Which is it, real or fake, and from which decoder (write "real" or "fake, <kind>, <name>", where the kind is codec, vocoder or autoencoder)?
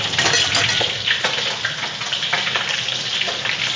real